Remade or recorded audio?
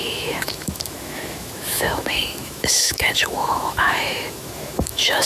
remade